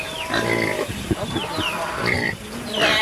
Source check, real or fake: real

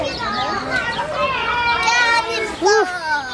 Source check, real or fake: real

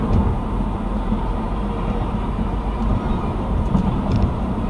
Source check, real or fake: fake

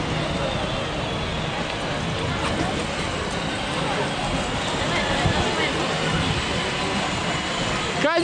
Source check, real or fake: real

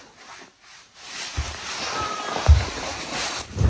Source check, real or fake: real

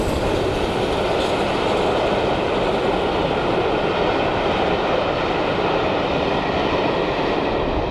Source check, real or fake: real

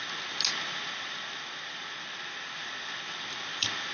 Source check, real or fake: real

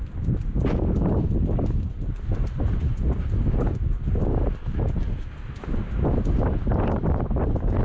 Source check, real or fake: real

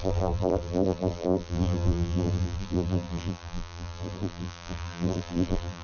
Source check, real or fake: fake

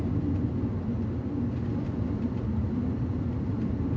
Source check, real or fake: real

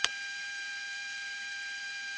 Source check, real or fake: fake